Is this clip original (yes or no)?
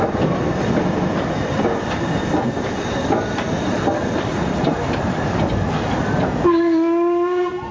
yes